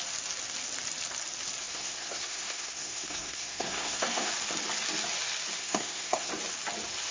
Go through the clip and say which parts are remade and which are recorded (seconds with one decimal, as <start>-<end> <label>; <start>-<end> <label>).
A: 0.0-1.6 recorded; 1.6-4.3 remade; 4.3-5.6 recorded; 5.6-6.3 remade; 6.3-7.1 recorded